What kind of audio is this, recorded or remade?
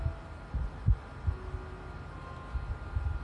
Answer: recorded